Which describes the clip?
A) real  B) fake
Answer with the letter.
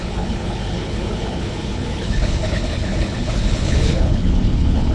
B